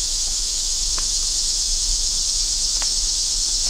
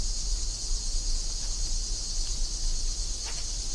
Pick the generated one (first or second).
first